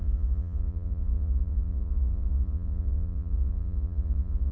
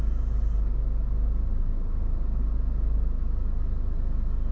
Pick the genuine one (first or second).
second